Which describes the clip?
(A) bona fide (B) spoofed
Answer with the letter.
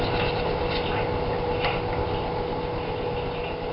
A